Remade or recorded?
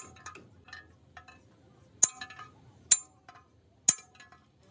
recorded